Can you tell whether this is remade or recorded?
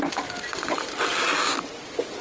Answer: recorded